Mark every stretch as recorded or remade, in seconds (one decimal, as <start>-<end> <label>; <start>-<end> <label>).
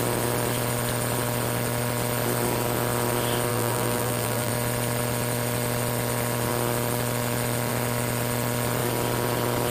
0.0-3.5 recorded; 3.5-4.5 remade; 4.5-9.7 recorded